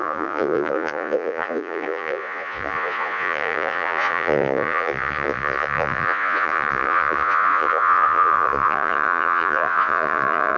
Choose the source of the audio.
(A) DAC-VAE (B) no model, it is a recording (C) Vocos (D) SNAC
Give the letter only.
C